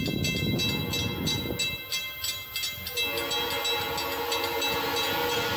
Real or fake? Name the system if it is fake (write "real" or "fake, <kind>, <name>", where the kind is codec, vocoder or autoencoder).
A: real